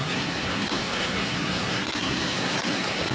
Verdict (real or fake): fake